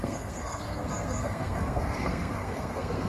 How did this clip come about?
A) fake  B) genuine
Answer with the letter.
A